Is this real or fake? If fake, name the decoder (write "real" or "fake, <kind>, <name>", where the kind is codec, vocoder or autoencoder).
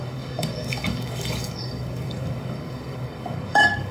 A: fake, codec, DAC